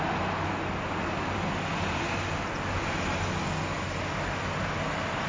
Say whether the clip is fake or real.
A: real